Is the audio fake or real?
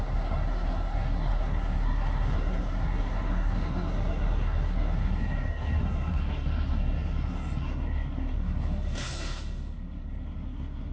fake